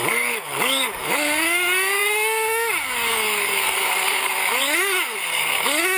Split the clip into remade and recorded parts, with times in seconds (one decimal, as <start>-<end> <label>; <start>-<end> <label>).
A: 0.0-6.0 remade